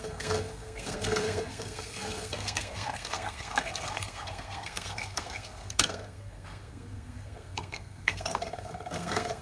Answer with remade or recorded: remade